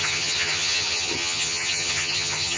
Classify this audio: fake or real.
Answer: fake